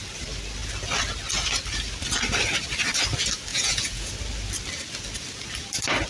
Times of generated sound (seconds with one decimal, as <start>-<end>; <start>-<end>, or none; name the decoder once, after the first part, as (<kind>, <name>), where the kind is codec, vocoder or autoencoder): 3.5-4.1 (vocoder, Vocos)